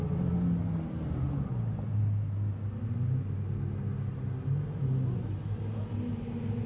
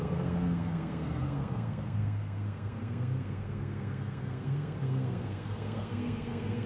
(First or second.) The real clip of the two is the first